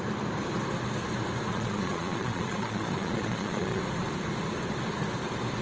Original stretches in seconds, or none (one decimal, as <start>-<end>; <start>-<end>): 0.0-1.5; 3.8-5.6